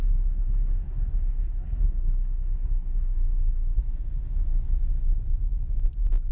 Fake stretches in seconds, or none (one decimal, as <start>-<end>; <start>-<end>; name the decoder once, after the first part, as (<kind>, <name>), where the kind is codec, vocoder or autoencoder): 0.0-3.8 (codec, SNAC)